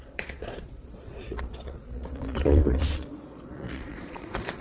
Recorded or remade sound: remade